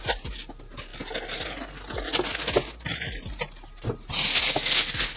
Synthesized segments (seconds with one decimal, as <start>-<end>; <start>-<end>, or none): none